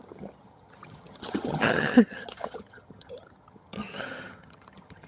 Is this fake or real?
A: fake